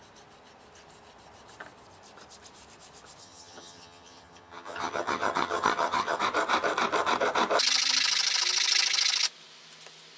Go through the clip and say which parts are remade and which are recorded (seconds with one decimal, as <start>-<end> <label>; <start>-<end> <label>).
0.0-3.2 recorded; 3.2-6.2 remade; 6.2-10.2 recorded